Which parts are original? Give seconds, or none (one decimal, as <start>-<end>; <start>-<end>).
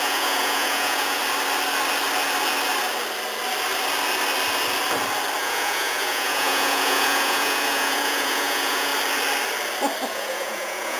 1.2-5.4; 8.9-10.1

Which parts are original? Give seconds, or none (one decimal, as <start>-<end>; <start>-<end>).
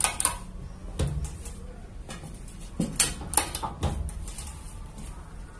0.0-5.6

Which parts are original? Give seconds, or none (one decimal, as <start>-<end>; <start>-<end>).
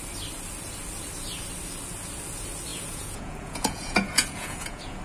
0.0-2.7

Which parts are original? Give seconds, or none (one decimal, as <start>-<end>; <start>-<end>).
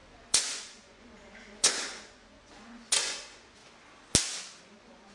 3.6-4.6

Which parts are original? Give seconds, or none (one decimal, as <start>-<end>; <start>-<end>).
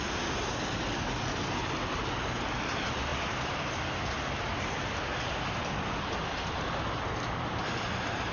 0.0-8.3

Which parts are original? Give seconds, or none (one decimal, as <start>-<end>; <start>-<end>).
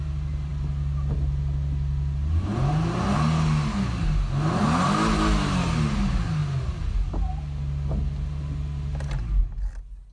0.0-10.1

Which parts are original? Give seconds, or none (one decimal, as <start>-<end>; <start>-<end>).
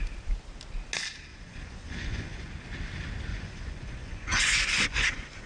0.0-1.3; 2.5-3.3